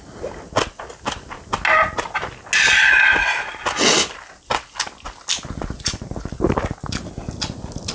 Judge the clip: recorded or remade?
recorded